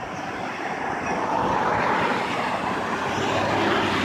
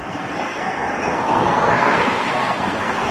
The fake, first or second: second